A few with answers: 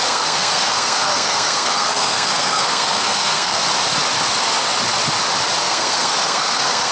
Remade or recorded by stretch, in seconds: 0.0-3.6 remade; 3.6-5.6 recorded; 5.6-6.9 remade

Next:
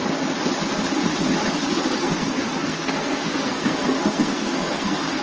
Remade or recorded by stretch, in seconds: 0.0-2.0 recorded; 2.0-5.2 remade